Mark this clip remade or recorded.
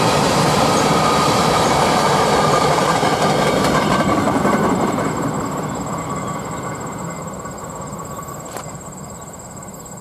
remade